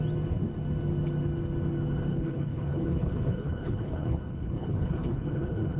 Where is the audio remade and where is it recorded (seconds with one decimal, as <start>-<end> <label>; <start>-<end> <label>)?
0.0-2.1 recorded; 2.1-5.8 remade